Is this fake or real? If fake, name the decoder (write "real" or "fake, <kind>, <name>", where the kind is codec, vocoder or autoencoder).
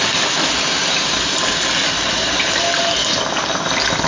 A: real